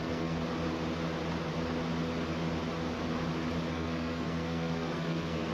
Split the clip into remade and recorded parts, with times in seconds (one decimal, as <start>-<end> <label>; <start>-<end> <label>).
0.0-0.4 remade; 0.4-3.7 recorded; 3.7-5.5 remade